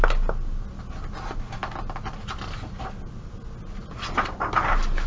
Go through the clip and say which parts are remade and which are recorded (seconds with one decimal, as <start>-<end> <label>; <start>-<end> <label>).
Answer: 0.0-5.1 recorded